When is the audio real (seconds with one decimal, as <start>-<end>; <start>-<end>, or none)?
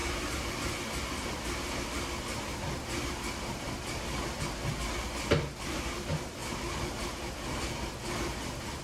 0.0-8.8